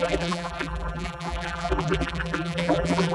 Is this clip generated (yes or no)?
yes